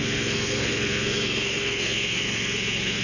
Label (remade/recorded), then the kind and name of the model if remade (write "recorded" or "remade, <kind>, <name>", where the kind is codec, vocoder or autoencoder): remade, codec, SNAC